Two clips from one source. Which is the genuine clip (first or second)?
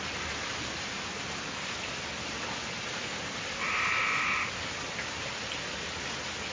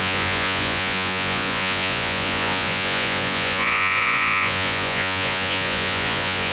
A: first